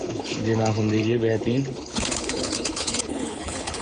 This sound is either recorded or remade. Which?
remade